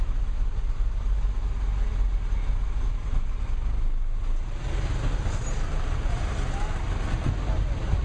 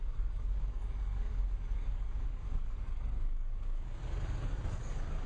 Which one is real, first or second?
first